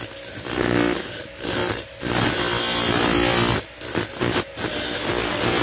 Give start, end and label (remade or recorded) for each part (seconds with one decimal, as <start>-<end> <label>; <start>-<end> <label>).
0.0-5.6 recorded